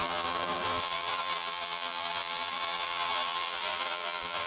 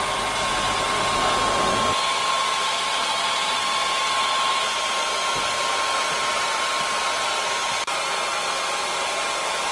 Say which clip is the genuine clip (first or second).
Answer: second